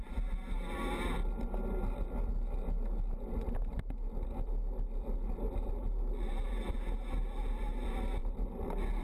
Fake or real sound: real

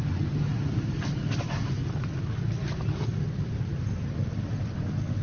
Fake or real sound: real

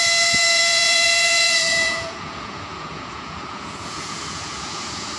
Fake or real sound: fake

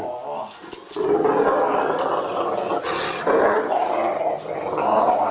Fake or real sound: real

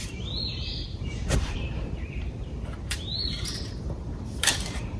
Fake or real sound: fake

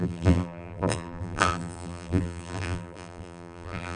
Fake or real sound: fake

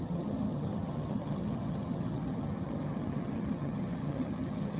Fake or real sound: fake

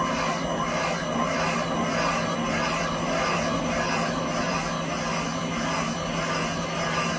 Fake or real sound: real